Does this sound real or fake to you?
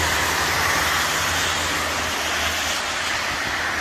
real